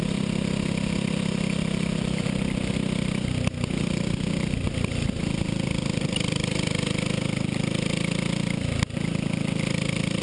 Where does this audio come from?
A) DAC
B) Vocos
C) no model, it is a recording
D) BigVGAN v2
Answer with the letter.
C